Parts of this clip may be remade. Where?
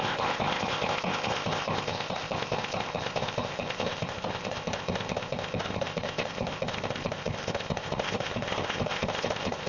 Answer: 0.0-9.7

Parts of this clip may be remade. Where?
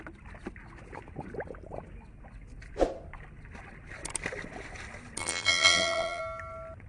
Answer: 5.2-6.2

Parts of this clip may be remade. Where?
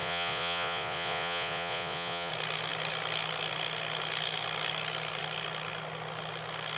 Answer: 0.0-2.3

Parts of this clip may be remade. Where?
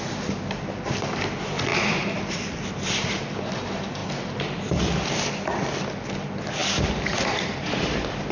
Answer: 1.7-2.9; 6.6-7.3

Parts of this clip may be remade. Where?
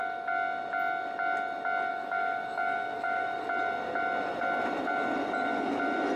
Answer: 1.9-3.4